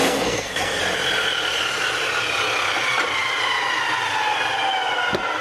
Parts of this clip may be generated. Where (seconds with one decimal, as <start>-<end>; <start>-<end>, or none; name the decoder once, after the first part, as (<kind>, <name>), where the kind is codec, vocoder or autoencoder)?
0.0-0.8 (codec, SNAC)